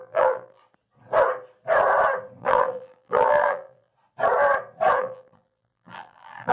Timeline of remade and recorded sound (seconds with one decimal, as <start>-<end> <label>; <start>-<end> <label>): 0.0-0.6 remade; 0.6-2.4 recorded; 2.4-3.9 remade; 3.9-5.0 recorded; 5.0-6.5 remade